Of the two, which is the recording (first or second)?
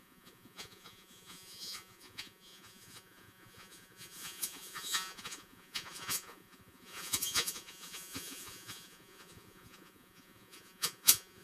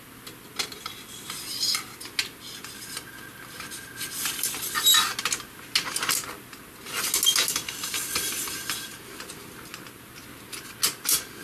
second